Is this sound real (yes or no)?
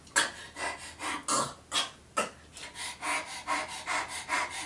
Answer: yes